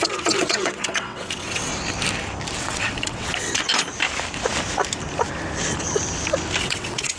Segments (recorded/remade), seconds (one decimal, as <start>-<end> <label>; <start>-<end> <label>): 0.0-1.7 remade; 1.7-2.6 recorded; 2.6-3.7 remade; 3.7-6.6 recorded; 6.6-7.2 remade